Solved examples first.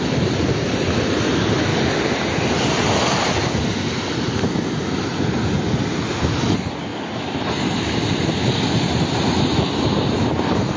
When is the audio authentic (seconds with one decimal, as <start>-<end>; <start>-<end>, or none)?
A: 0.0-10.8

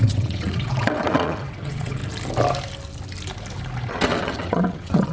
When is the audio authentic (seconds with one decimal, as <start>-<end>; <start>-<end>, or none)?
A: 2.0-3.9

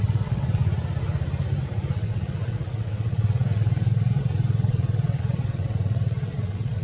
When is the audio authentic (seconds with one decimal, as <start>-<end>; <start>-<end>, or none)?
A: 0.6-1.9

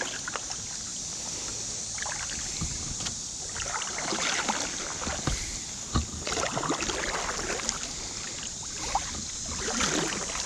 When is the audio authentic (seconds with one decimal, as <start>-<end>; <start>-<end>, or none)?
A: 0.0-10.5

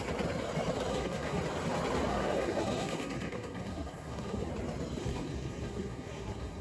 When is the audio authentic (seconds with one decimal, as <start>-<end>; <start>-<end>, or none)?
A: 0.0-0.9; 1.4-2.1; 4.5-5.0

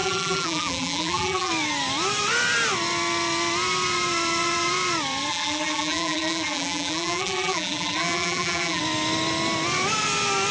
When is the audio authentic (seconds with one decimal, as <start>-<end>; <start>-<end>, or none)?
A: 1.5-5.3; 8.8-10.5

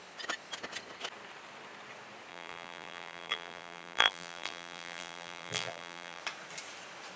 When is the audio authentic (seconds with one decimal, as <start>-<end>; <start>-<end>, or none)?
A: 0.0-2.3; 6.2-7.2

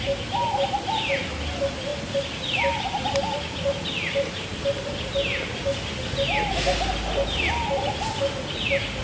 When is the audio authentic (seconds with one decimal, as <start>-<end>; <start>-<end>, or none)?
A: 0.0-9.0